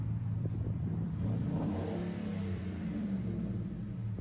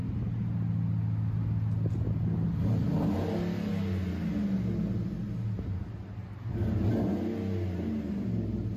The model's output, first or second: first